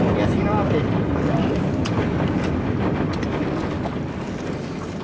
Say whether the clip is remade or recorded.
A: recorded